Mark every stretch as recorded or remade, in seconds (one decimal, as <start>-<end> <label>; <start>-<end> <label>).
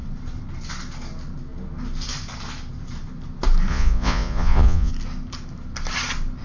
0.0-3.7 recorded; 3.7-4.9 remade; 4.9-6.4 recorded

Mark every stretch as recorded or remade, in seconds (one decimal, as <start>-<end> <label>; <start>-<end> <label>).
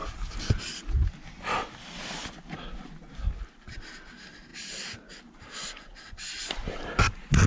0.0-7.5 recorded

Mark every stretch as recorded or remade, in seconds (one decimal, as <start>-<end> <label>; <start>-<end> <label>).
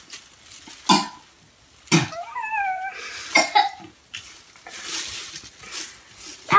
0.0-6.6 recorded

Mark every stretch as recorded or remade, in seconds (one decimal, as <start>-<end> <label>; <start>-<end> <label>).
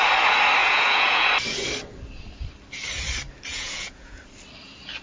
0.0-0.6 recorded; 0.6-1.3 remade; 1.3-3.5 recorded; 3.5-4.2 remade; 4.2-5.0 recorded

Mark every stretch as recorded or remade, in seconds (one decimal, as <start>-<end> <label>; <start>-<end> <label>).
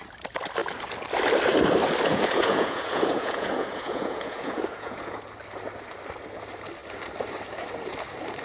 0.0-2.1 recorded; 2.1-5.2 remade; 5.2-8.4 recorded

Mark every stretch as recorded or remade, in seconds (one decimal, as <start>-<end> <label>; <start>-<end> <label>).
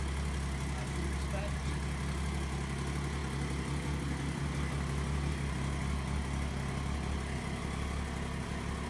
0.0-8.9 recorded